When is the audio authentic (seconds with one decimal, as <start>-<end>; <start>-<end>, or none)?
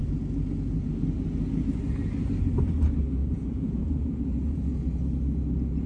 0.0-3.2; 5.0-5.9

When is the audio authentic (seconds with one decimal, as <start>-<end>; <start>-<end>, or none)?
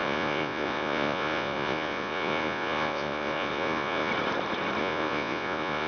4.1-4.8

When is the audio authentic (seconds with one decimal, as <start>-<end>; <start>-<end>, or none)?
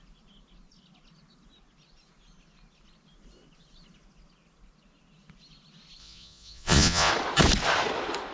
0.0-6.0; 7.1-8.3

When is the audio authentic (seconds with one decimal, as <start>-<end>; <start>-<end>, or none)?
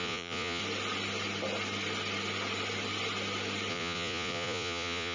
0.6-3.7